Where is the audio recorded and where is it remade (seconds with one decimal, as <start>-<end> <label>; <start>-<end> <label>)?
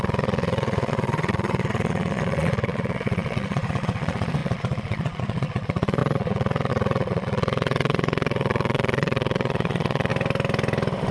0.0-10.1 remade; 10.1-11.1 recorded